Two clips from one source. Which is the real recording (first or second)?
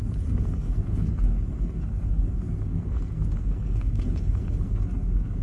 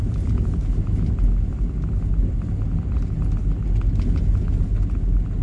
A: second